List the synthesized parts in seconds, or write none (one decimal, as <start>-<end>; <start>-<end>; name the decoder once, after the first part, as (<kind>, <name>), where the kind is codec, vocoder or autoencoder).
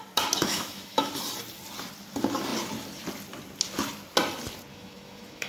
0.4-1.1 (autoencoder, DAC-VAE); 4.7-5.5